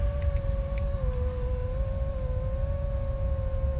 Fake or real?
real